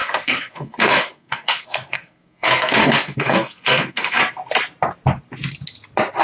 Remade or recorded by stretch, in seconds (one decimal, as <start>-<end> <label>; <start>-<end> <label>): 0.0-4.2 remade; 4.2-6.2 recorded